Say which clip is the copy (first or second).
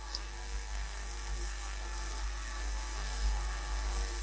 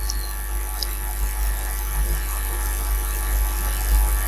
first